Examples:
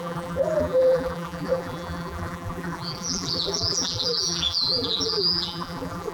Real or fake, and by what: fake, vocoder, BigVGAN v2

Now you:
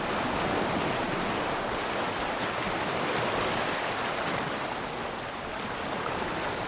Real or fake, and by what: real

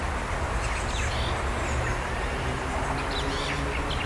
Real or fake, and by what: real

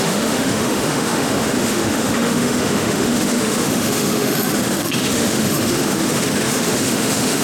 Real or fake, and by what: fake, autoencoder, DAC-VAE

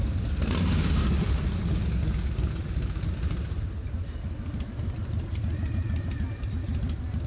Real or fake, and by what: real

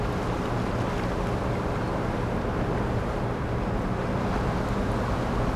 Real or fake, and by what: real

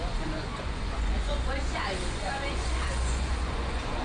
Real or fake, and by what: fake, vocoder, Vocos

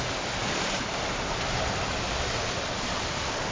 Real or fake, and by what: real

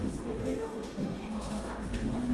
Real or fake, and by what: fake, autoencoder, DAC-VAE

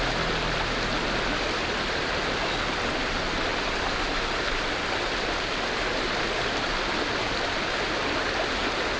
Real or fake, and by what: real